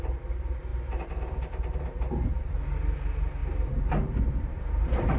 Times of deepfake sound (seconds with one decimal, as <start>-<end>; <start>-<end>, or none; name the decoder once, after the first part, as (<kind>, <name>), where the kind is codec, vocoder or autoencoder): 0.0-3.4 (vocoder, BigVGAN v2); 4.2-5.2

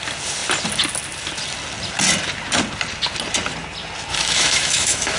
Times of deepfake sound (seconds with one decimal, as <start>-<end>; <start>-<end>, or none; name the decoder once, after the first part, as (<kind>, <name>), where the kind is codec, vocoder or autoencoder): 4.1-5.2 (autoencoder, DAC-VAE)

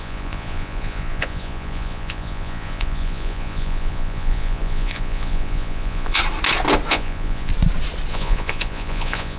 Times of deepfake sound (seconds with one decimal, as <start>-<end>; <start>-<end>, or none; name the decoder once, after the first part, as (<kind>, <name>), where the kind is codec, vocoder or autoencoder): 0.0-6.2 (vocoder, Vocos); 6.9-7.5; 8.1-9.4

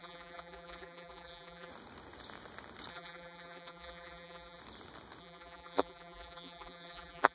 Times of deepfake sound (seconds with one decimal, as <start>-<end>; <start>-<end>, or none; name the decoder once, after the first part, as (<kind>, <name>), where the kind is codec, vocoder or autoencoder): 0.0-1.7 (vocoder, BigVGAN v2); 2.9-4.6; 5.2-7.3

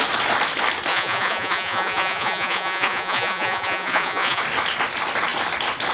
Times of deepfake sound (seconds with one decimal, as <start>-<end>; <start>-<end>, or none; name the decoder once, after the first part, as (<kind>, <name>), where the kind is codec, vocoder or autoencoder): 0.9-4.4 (vocoder, Vocos)

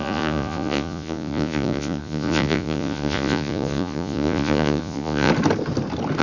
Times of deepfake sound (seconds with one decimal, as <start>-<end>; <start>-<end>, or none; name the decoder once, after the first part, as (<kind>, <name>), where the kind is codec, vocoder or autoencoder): 0.0-5.3 (vocoder, Vocos)

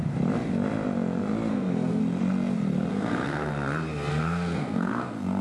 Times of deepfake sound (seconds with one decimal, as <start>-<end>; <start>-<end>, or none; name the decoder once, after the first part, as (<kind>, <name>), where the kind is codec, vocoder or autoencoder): 1.5-2.0 (codec, SNAC); 2.9-3.5; 4.1-5.4

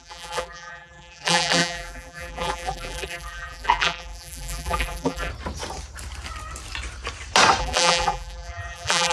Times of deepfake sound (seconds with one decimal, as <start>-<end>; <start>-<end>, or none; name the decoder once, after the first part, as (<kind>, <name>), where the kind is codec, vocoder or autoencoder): 0.0-5.3 (vocoder, BigVGAN v2); 7.6-9.1